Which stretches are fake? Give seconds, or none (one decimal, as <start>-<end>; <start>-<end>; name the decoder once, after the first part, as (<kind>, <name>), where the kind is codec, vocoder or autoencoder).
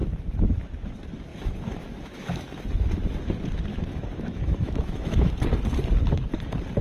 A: 0.0-0.9 (autoencoder, DAC-VAE); 1.3-2.6; 3.7-5.3